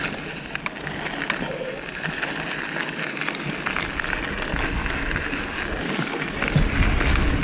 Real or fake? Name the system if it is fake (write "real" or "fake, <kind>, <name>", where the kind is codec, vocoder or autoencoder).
real